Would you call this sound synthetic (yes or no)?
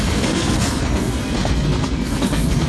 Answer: yes